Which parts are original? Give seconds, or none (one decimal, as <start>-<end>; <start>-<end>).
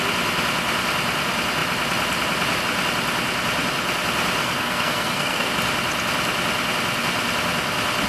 0.0-4.4; 5.5-8.1